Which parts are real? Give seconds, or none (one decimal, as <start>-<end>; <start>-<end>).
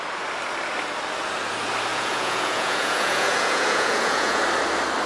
0.0-1.9; 4.4-5.1